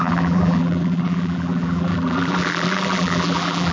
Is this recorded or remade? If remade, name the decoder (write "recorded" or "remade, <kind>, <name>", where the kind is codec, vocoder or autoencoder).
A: remade, vocoder, BigVGAN v2